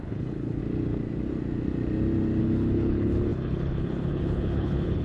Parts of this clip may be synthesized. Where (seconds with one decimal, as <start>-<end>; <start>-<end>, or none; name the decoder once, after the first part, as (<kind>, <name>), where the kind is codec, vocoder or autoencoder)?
0.0-0.6 (codec, HILCodec); 2.4-5.0